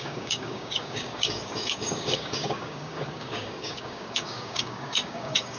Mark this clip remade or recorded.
remade